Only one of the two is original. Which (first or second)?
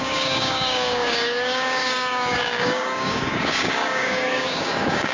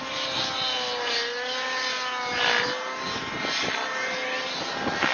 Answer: second